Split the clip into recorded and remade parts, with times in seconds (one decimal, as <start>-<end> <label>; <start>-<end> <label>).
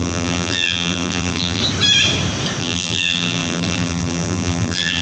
0.0-1.6 remade; 1.6-2.6 recorded; 2.6-5.0 remade